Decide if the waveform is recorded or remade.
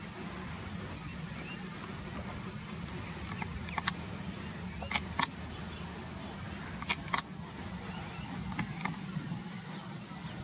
recorded